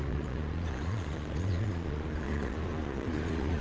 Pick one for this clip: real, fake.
fake